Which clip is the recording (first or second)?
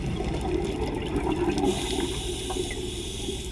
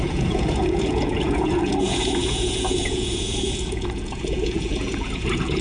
first